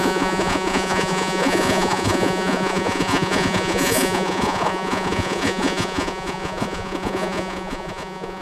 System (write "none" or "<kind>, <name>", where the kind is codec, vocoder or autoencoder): vocoder, Vocos